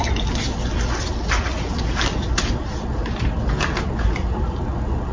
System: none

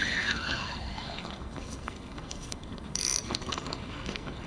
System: codec, SNAC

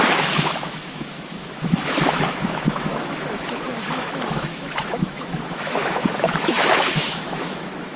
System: autoencoder, DAC-VAE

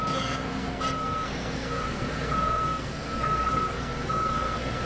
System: codec, SNAC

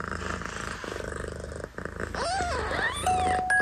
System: none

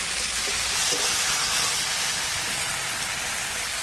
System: none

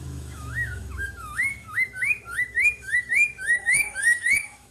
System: autoencoder, DAC-VAE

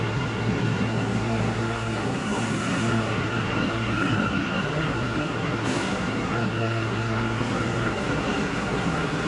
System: codec, SNAC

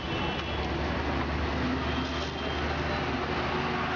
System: none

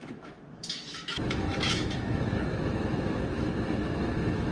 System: autoencoder, DAC-VAE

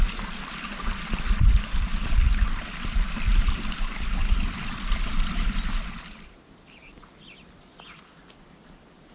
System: none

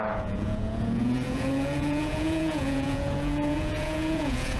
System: vocoder, Vocos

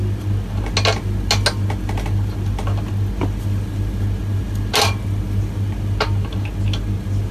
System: none